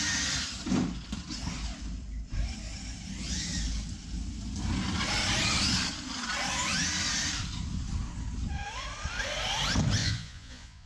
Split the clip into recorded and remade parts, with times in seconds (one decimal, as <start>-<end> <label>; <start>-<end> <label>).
0.0-10.0 recorded; 10.0-10.9 remade

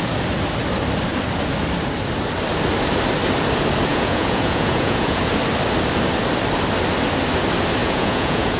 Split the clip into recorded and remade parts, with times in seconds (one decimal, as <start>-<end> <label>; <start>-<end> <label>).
0.0-3.9 recorded; 3.9-5.2 remade; 5.2-7.8 recorded; 7.8-8.6 remade

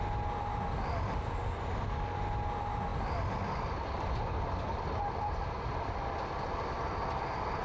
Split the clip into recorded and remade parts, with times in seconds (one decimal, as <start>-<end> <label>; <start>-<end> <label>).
0.0-7.6 recorded

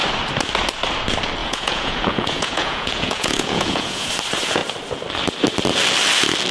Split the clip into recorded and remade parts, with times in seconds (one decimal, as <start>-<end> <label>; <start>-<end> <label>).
0.0-1.4 recorded; 1.4-4.1 remade; 4.1-6.5 recorded

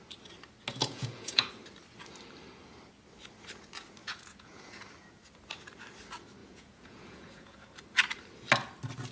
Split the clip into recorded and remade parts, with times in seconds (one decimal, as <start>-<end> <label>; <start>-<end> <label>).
0.0-0.8 recorded; 0.8-1.5 remade; 1.5-4.0 recorded; 4.0-4.9 remade; 4.9-6.4 recorded; 6.4-7.7 remade; 7.7-9.1 recorded

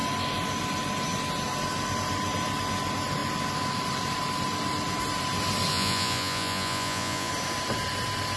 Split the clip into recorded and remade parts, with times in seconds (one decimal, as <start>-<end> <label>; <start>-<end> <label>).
0.0-5.7 recorded; 5.7-7.3 remade; 7.3-8.4 recorded